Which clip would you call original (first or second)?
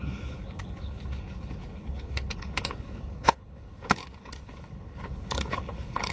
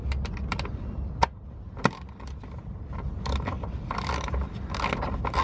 second